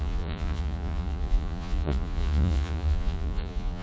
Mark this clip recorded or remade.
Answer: remade